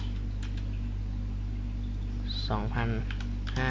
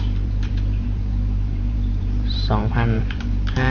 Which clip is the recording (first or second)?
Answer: first